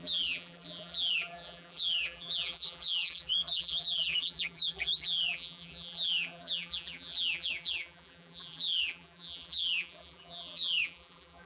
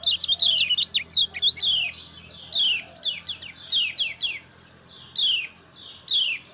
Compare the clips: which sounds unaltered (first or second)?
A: second